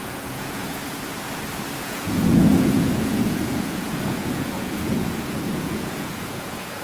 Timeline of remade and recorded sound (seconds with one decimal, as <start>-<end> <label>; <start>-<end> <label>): 0.0-0.8 remade; 0.8-1.8 recorded; 1.8-6.8 remade